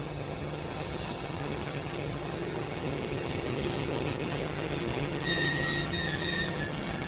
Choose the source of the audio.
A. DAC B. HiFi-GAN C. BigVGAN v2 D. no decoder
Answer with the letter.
B